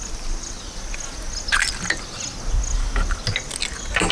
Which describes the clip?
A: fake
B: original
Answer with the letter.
B